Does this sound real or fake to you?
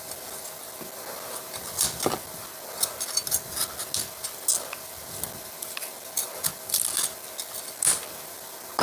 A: real